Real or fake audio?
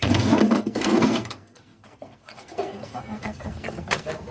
fake